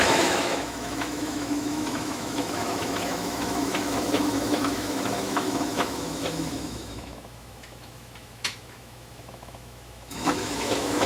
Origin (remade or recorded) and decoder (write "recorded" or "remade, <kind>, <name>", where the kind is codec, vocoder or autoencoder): remade, autoencoder, DAC-VAE